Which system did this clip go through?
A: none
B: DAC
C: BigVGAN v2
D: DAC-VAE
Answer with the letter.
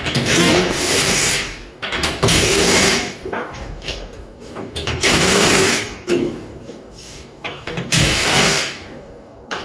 B